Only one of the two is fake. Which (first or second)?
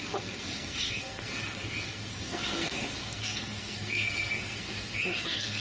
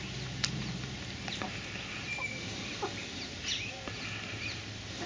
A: first